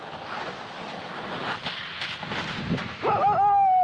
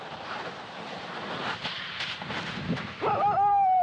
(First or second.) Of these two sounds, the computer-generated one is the second